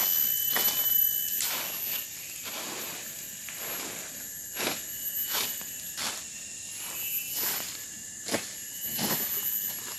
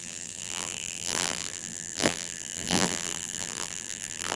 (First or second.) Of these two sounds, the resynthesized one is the second